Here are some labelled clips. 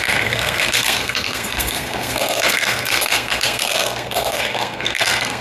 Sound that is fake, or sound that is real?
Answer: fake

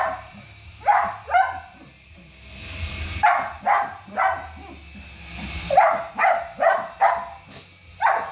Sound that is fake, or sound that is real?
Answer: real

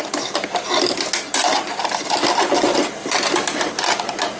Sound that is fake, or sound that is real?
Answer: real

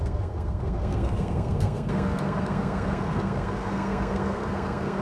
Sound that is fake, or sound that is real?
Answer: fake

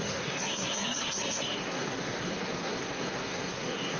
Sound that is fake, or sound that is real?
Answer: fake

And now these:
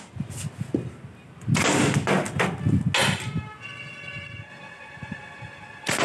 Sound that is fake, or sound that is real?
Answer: real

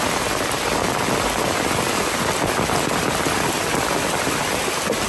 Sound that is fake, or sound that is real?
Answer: real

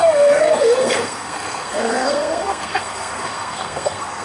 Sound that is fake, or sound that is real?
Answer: fake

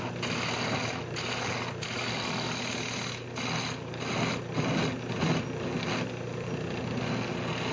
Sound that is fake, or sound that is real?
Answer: real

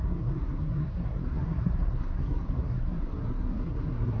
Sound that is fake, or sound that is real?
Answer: fake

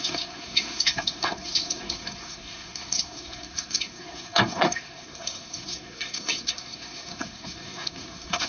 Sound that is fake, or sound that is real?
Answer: fake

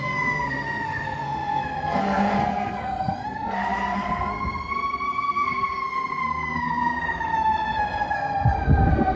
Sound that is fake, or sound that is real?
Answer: fake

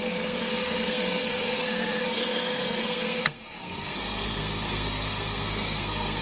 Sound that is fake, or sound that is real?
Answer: fake